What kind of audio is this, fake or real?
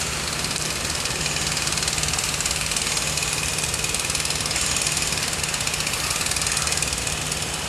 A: real